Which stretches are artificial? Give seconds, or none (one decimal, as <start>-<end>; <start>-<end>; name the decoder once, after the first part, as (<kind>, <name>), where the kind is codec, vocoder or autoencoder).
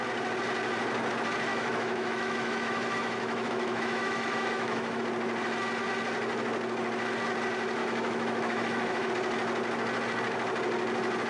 1.5-5.0 (autoencoder, DAC-VAE); 7.8-9.1